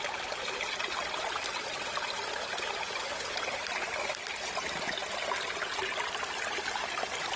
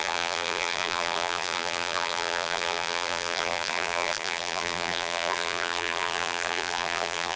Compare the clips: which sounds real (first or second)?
first